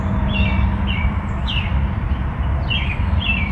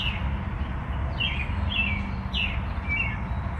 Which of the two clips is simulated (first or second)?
first